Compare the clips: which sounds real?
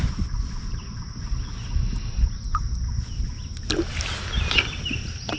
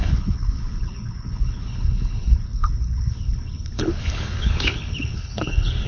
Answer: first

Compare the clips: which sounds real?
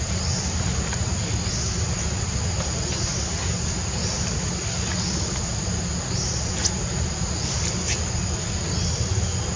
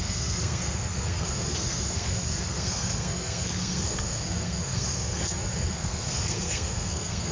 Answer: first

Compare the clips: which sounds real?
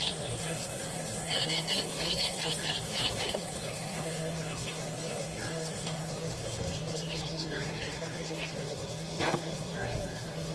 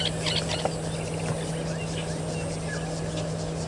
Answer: second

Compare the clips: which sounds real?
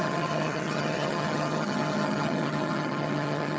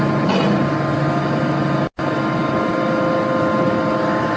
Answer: second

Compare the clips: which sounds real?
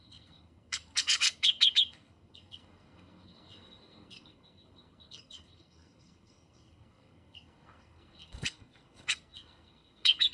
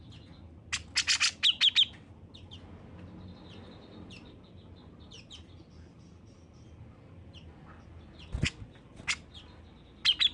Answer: second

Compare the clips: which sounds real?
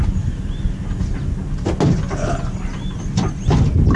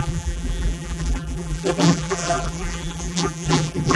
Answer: first